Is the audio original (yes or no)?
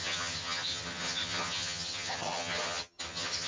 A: no